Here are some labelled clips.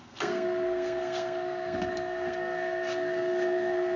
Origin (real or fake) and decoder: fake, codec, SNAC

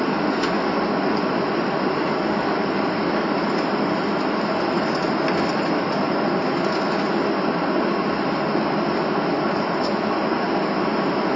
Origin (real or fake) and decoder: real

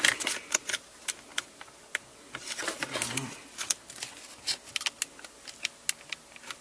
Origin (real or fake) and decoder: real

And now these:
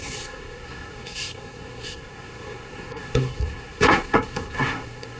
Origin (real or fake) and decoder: fake, codec, SNAC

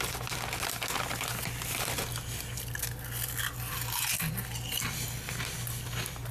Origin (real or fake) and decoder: real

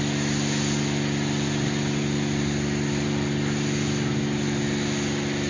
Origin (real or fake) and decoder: real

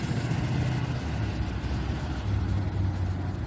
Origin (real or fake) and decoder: real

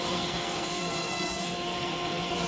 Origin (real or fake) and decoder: fake, codec, SNAC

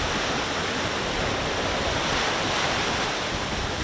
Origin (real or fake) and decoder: real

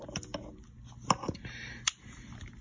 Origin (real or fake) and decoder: real